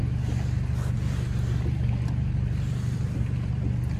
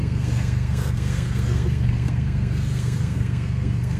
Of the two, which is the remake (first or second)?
second